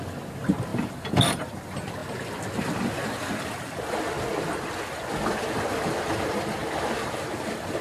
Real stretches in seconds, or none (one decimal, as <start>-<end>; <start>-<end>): 0.0-0.7; 1.5-6.6